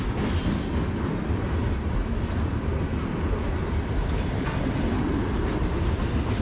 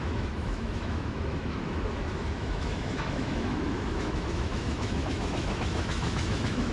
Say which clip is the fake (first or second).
second